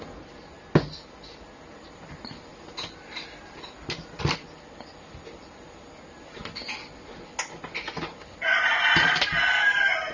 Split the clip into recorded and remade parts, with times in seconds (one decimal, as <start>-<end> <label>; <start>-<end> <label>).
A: 0.0-10.1 recorded